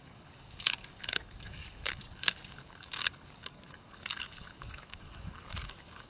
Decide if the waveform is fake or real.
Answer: fake